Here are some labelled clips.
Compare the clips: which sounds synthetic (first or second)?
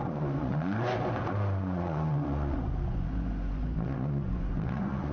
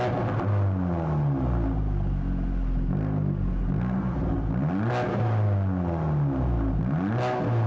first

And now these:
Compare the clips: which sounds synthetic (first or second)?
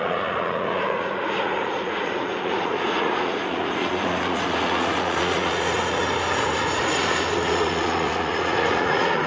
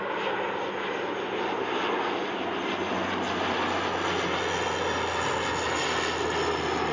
first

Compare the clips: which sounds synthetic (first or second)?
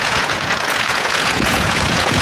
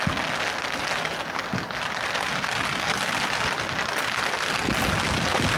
first